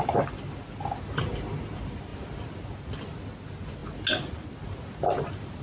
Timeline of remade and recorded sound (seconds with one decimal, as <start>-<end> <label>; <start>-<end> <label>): 0.0-5.6 recorded